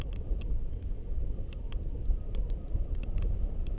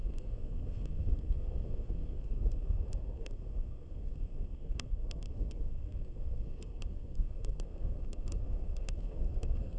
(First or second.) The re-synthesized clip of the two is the second